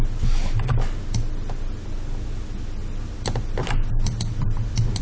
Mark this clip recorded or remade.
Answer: recorded